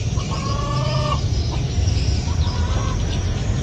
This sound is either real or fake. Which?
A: fake